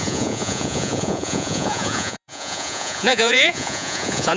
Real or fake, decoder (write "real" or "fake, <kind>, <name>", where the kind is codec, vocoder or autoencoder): fake, vocoder, Vocos